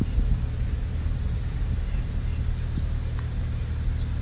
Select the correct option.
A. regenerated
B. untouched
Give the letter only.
B